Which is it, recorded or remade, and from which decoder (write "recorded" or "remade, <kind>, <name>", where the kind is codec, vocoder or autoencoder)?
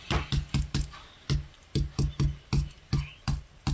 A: recorded